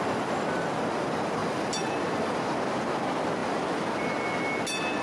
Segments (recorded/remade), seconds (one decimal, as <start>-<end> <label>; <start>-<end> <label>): 0.0-5.0 recorded